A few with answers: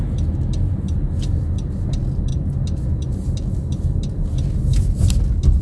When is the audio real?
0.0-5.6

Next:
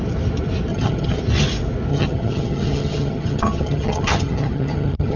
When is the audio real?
0.0-0.7; 1.2-1.9

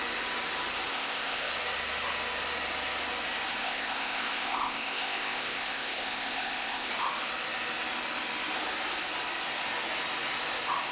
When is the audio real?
0.0-0.9; 1.5-3.6; 6.9-10.9

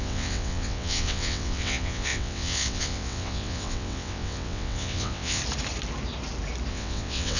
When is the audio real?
5.4-6.7